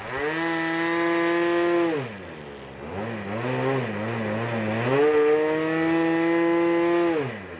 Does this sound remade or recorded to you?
recorded